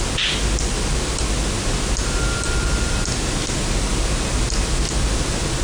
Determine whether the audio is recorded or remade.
recorded